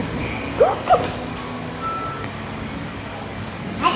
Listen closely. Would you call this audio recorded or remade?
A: remade